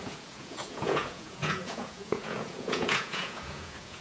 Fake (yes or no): yes